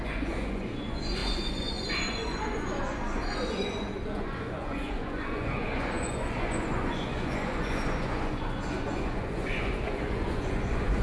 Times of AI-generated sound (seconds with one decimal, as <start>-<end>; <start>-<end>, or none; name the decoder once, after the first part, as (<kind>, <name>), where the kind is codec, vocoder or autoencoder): 0.0-11.0 (vocoder, Vocos)